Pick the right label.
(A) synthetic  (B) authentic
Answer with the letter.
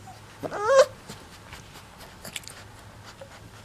B